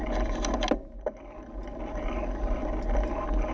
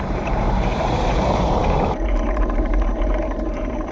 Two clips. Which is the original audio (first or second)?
first